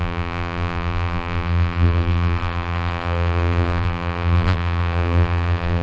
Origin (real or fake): fake